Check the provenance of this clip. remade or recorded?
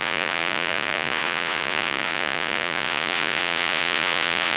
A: remade